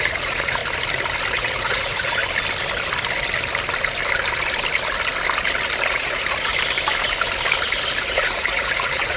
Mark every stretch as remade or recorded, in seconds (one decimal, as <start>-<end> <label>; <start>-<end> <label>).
0.0-0.6 remade; 0.6-1.3 recorded; 1.3-2.2 remade; 2.2-5.9 recorded; 5.9-6.5 remade; 6.5-8.1 recorded; 8.1-9.2 remade